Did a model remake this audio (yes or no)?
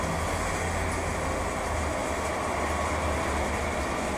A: no